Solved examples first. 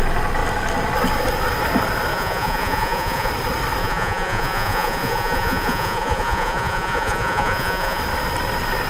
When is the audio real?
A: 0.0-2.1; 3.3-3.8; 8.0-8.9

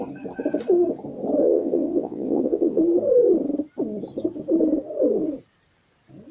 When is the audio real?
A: 0.0-1.4; 2.8-6.3